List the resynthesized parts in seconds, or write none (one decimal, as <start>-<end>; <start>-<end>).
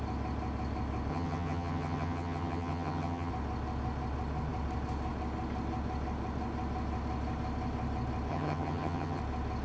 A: 1.1-3.3; 8.3-9.2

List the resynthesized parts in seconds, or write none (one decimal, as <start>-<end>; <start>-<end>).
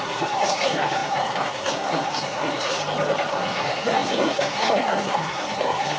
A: 0.0-2.8; 3.3-6.0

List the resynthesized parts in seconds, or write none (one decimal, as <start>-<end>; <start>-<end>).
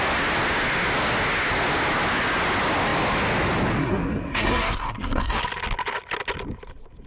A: 3.8-5.4